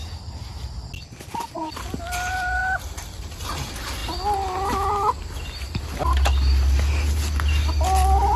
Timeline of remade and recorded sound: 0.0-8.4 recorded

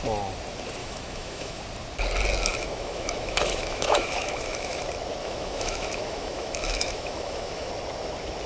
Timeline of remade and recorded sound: 0.0-0.8 recorded; 0.8-1.6 remade; 1.6-2.5 recorded; 2.5-4.8 remade; 4.8-5.2 recorded; 5.2-7.7 remade; 7.7-8.5 recorded

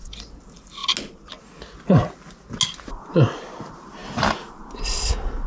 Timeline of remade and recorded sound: 0.0-5.5 recorded

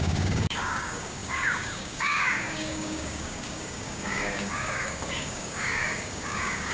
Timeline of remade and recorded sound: 0.0-6.7 remade

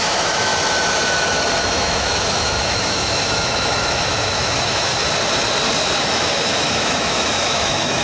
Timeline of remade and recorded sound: 0.0-0.5 remade; 0.5-1.6 recorded; 1.6-4.9 remade; 4.9-6.0 recorded; 6.0-8.0 remade

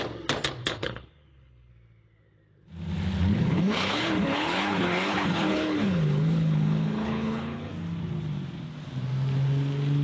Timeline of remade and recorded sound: 0.0-0.6 recorded; 0.6-1.7 remade; 1.7-3.3 recorded; 3.3-7.7 remade; 7.7-10.0 recorded

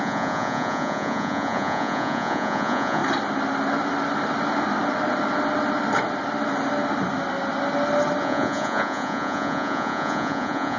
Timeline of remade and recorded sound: 0.0-3.0 remade; 3.0-8.2 recorded; 8.2-10.8 remade